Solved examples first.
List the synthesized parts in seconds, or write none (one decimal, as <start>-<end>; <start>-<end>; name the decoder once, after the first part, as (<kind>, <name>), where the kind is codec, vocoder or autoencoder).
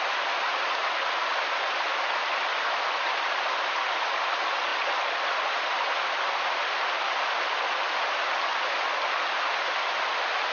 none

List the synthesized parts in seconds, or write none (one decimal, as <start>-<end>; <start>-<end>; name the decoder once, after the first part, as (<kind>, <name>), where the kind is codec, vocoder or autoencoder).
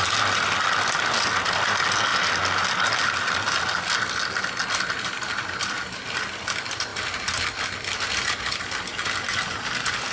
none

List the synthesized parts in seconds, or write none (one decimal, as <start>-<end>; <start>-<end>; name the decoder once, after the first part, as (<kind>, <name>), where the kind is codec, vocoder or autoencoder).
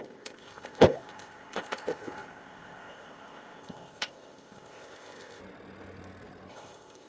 0.0-5.4 (codec, ZipCodec); 6.5-7.1